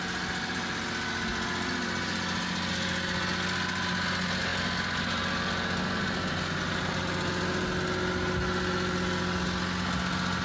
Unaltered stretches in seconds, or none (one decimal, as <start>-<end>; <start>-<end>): 0.0-10.4